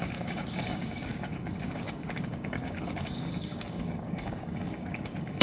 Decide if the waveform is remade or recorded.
remade